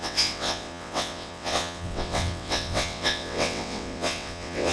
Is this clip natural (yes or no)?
no